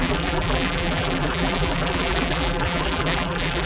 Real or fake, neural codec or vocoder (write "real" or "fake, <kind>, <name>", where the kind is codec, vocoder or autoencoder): fake, vocoder, BigVGAN v2